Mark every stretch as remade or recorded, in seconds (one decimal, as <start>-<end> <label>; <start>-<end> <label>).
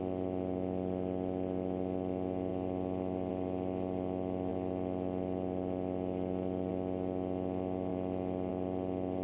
0.0-9.2 recorded